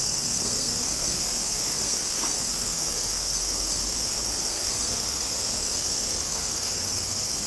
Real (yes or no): no